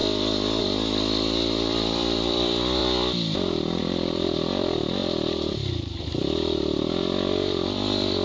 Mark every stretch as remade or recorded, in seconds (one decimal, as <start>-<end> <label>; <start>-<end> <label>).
0.0-0.6 recorded; 0.6-2.8 remade; 2.8-3.8 recorded; 3.8-5.0 remade; 5.0-5.5 recorded; 5.5-8.2 remade